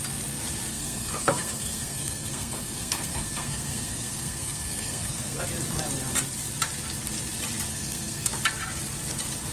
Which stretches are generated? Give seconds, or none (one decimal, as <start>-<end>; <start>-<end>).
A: 0.7-5.4; 7.7-8.3